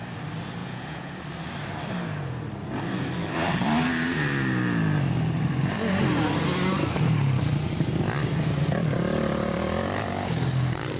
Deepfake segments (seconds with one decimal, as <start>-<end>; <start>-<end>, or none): 0.6-1.2